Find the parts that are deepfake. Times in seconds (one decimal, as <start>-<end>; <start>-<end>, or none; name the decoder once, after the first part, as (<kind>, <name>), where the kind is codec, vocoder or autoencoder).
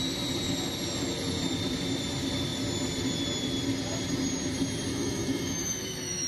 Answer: 4.9-6.3 (autoencoder, DAC-VAE)